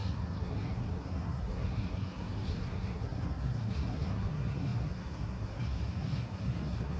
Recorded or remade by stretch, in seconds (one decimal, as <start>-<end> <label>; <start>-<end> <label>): 0.0-7.0 remade